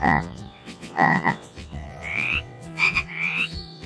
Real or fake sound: fake